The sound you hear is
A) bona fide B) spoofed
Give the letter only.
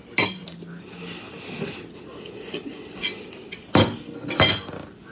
A